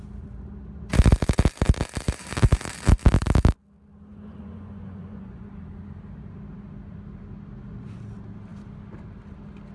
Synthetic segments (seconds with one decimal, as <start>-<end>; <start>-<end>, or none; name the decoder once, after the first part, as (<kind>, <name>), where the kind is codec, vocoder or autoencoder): 4.1-5.5 (vocoder, Vocos)